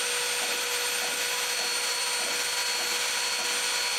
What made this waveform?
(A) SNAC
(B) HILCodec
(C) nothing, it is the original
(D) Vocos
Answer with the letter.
C